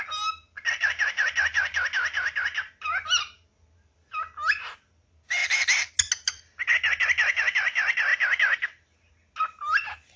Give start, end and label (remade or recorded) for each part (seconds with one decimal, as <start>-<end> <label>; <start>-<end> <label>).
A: 0.0-10.2 recorded